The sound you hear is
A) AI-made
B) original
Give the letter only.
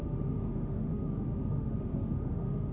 A